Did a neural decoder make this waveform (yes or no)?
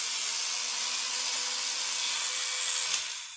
no